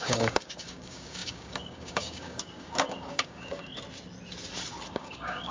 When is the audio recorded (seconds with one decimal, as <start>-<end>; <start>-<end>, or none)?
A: 3.7-4.9